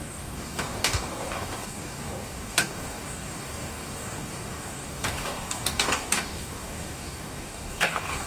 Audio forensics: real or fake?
fake